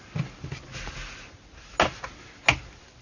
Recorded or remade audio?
recorded